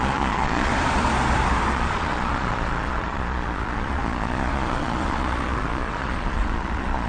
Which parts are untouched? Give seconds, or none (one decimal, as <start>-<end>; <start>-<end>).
0.7-1.7